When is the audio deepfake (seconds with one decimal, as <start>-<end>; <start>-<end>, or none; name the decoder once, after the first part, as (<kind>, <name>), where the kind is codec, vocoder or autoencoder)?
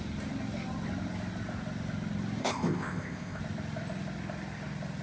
2.4-3.4 (codec, ZipCodec)